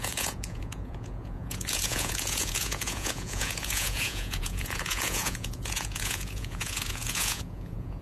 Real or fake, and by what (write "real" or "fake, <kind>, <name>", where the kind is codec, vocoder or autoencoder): fake, vocoder, Vocos